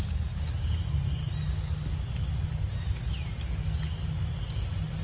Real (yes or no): yes